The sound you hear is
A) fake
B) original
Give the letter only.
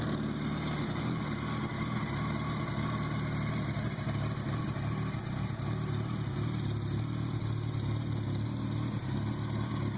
B